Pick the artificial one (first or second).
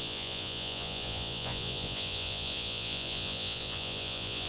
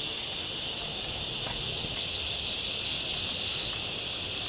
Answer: first